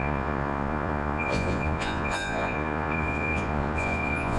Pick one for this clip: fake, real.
fake